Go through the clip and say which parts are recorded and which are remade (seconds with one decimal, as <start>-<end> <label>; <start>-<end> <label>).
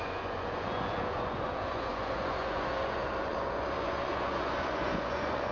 0.0-5.5 remade